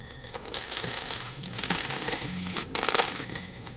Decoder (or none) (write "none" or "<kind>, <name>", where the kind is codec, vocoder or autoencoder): autoencoder, DAC-VAE